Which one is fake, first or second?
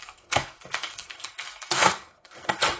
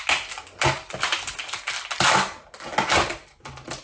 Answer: first